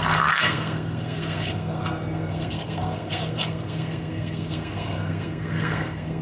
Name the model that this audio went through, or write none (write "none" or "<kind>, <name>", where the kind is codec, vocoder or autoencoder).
codec, SNAC